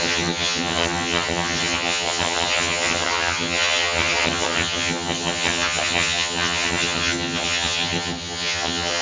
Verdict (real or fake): fake